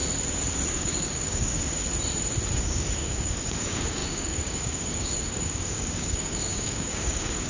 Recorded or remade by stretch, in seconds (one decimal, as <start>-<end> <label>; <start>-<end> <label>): 0.0-0.7 recorded; 0.7-1.8 remade; 1.8-2.6 recorded; 2.6-7.5 remade

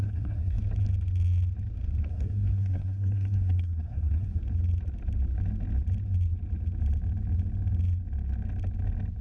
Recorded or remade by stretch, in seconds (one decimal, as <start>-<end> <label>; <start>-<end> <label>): 0.0-0.6 remade; 0.6-2.1 recorded; 2.1-4.4 remade; 4.4-9.2 recorded

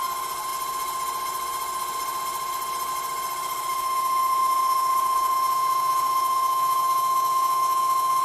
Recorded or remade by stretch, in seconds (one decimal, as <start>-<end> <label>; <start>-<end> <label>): 0.0-3.7 recorded; 3.7-8.2 remade